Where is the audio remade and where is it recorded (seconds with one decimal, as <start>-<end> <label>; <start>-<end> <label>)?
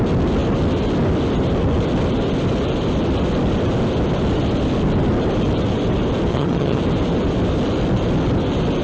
0.0-6.3 recorded; 6.3-6.8 remade; 6.8-8.8 recorded